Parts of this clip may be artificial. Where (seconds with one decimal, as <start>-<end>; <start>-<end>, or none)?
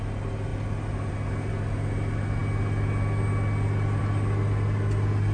none